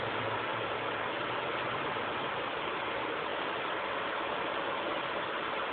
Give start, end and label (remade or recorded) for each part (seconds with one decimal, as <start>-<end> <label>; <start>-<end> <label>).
0.0-5.7 recorded